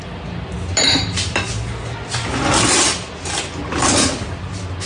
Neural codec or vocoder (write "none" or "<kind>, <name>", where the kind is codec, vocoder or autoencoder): none